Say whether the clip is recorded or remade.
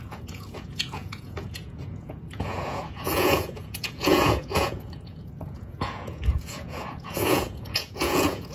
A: remade